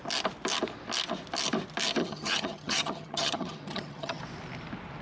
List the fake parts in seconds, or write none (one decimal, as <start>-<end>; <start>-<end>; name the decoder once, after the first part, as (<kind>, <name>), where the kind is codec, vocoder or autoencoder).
2.0-4.2 (vocoder, HiFi-GAN)